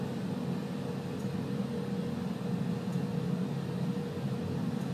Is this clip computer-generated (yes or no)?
no